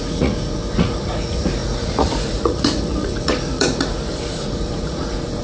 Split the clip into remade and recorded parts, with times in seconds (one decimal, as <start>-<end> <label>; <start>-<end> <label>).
0.0-5.4 remade